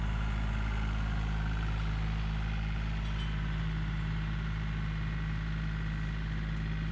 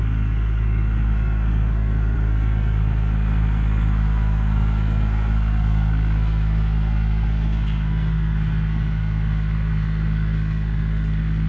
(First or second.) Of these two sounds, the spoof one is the second